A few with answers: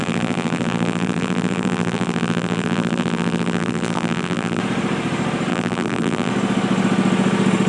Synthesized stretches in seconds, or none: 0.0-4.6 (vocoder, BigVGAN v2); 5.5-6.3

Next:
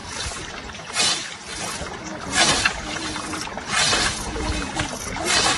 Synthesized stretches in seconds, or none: 0.0-1.2 (vocoder, BigVGAN v2)

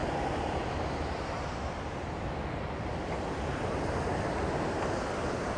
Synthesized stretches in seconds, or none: 0.0-2.3 (vocoder, BigVGAN v2)

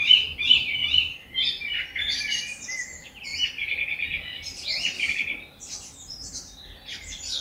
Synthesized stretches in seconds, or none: 0.0-0.8 (vocoder, BigVGAN v2); 2.0-3.3; 5.1-7.4

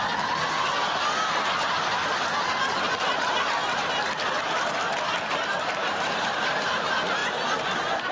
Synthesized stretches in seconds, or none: none